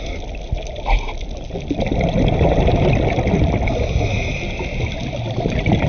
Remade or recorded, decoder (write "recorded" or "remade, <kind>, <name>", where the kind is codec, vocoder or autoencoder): recorded